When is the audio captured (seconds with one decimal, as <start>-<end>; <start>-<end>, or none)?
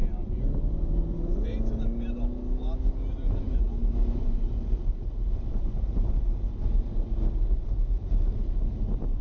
0.0-3.8; 8.2-9.2